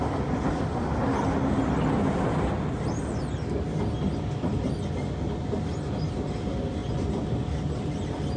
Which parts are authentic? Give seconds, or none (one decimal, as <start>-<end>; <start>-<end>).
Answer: 0.0-8.4